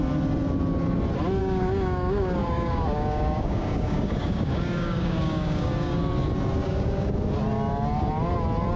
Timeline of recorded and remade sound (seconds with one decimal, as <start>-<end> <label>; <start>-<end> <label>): 0.0-1.4 recorded; 1.4-6.0 remade; 6.0-6.6 recorded; 6.6-7.2 remade; 7.2-8.8 recorded

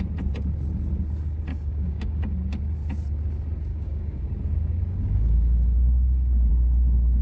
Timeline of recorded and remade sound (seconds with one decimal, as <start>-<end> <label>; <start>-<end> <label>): 0.0-1.5 recorded; 1.5-2.3 remade; 2.3-3.7 recorded; 3.7-4.2 remade; 4.2-4.8 recorded; 4.8-6.5 remade; 6.5-7.2 recorded

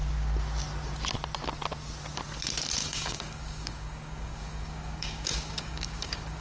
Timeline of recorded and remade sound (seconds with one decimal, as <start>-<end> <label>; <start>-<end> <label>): 0.0-2.8 recorded; 2.8-6.4 remade

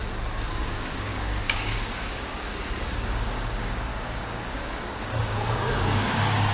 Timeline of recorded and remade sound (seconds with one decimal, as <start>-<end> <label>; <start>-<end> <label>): 0.0-0.5 recorded; 0.5-6.5 remade